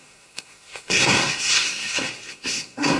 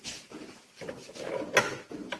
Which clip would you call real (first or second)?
second